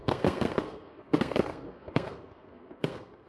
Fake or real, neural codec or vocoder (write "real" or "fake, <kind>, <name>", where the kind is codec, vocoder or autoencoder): fake, codec, SNAC